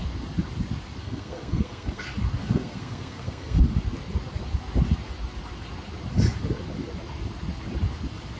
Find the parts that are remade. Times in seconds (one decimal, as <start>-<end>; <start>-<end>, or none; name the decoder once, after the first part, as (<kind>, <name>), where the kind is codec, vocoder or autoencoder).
1.0-2.0 (codec, SNAC); 2.4-3.6